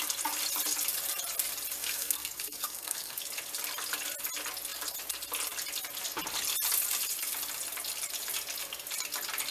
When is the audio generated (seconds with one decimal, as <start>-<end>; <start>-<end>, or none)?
1.8-3.2